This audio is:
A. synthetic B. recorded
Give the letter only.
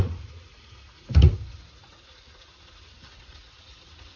A